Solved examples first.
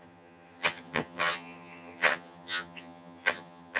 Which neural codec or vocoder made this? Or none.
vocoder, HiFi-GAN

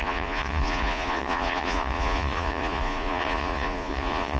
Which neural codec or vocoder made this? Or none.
vocoder, Vocos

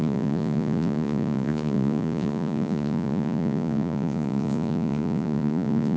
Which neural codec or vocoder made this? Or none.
vocoder, Vocos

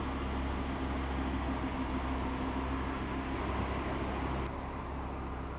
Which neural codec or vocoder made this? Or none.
none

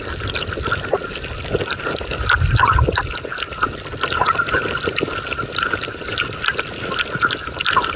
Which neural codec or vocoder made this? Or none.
none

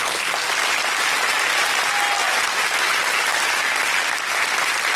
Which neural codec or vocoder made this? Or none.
none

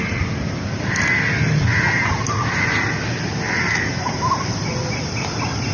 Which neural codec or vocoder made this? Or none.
none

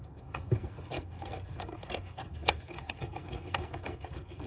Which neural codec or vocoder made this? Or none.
codec, SNAC